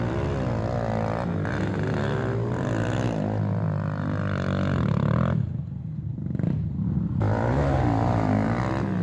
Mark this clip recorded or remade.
recorded